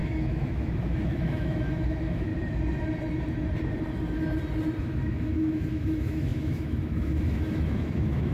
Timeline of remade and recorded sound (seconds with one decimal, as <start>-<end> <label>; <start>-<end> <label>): 0.0-2.3 remade; 2.3-4.8 recorded; 4.8-8.3 remade